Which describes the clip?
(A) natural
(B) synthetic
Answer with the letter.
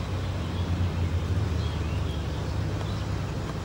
A